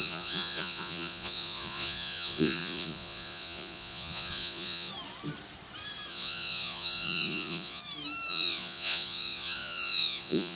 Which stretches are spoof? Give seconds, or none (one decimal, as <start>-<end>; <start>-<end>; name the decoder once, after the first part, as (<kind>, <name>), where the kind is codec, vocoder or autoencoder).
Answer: 0.0-4.9 (vocoder, Vocos); 6.1-7.8; 8.3-10.6